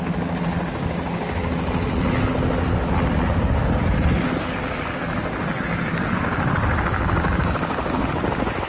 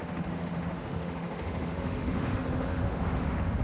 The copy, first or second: second